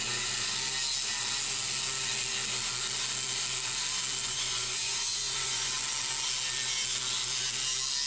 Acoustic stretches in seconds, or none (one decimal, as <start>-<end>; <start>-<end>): 0.0-4.2; 5.7-8.1